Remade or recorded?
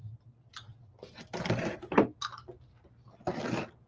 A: recorded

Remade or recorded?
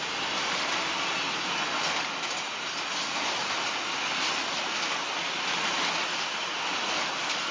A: recorded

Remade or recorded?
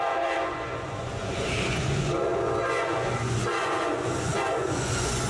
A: remade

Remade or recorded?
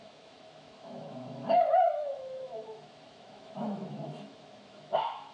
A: remade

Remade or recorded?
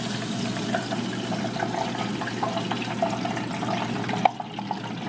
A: recorded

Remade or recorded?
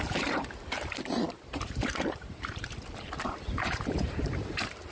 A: remade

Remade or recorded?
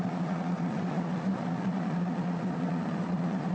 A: remade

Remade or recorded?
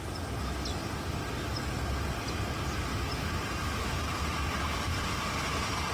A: recorded